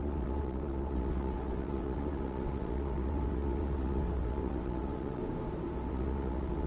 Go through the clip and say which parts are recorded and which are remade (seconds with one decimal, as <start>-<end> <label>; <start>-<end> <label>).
0.0-5.2 remade; 5.2-5.9 recorded; 5.9-6.7 remade